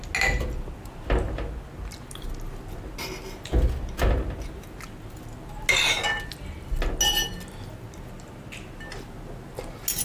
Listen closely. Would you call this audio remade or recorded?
recorded